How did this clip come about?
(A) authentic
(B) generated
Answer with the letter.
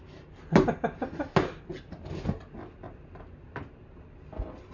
A